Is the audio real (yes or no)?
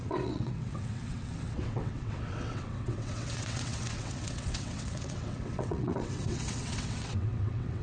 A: no